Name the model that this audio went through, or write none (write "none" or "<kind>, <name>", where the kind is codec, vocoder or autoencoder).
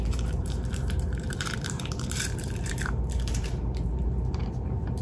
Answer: vocoder, BigVGAN v2